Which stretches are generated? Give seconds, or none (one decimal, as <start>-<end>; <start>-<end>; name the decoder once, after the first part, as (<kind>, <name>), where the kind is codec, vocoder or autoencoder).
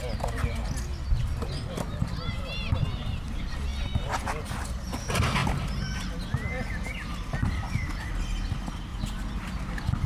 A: 8.9-10.1 (vocoder, BigVGAN v2)